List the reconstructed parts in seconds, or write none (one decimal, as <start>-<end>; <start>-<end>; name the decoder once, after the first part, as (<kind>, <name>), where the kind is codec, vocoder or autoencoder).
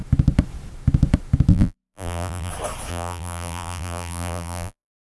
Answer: 1.5-2.5 (vocoder, BigVGAN v2); 2.9-5.2